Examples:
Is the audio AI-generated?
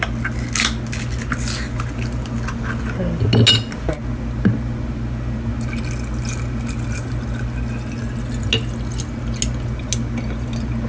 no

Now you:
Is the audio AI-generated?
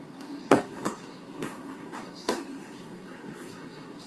yes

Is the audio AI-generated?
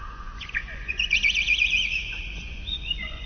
yes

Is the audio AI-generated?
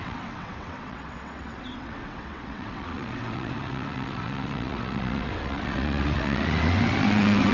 yes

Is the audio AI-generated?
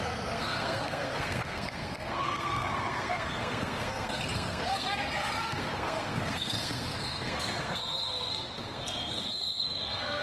yes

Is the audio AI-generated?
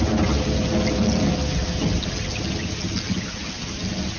no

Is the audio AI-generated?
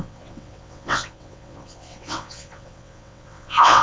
yes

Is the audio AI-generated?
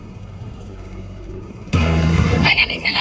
yes